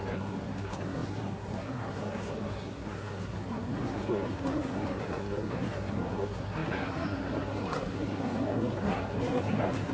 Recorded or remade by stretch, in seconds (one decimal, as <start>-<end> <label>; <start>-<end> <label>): 0.0-9.9 remade